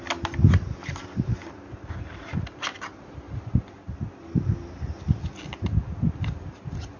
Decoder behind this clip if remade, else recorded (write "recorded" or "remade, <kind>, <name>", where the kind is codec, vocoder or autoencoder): recorded